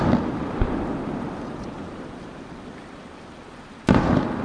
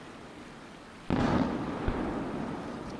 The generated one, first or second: first